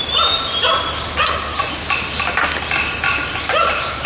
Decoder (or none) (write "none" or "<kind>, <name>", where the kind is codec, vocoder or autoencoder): none